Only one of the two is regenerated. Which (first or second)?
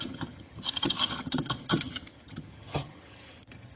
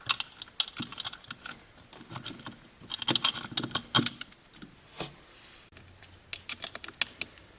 first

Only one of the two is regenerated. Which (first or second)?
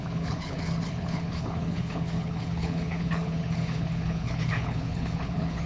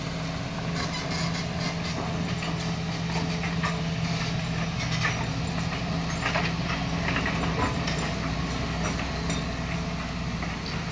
first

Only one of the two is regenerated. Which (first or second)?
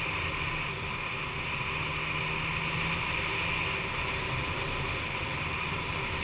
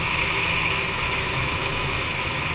second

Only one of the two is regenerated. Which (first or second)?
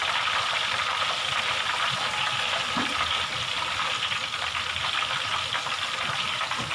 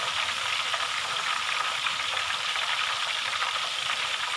second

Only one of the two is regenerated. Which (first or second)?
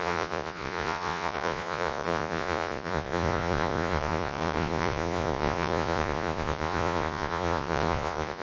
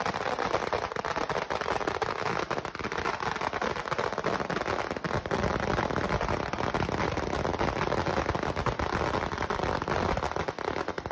first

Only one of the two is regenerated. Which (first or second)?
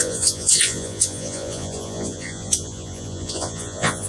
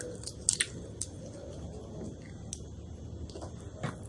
first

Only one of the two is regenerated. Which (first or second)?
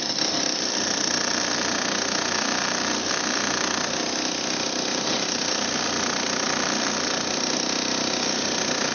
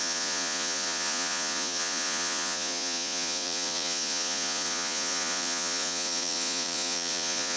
second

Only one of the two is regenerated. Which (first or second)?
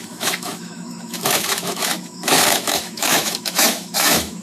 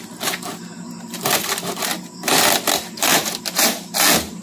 first